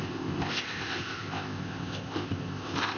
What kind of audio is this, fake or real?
fake